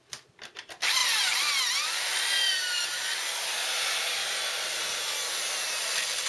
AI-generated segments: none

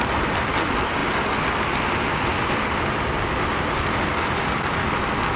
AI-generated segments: none

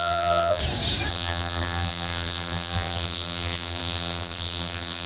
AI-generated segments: 0.0-0.6 (vocoder, BigVGAN v2); 1.1-5.1